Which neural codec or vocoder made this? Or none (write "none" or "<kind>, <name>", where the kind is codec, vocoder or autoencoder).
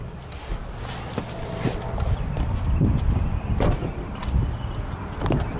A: none